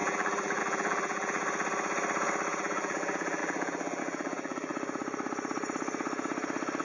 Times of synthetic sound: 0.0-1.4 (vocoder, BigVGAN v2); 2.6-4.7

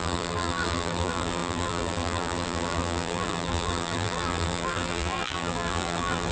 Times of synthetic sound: 0.0-6.3 (vocoder, BigVGAN v2)

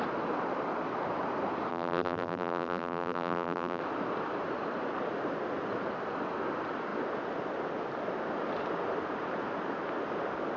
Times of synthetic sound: 1.7-3.8 (vocoder, BigVGAN v2)

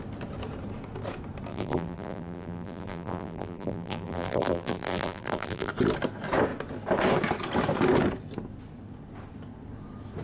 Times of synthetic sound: 1.5-5.7 (vocoder, BigVGAN v2)